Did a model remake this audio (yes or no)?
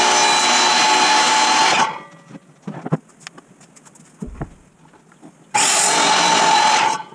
no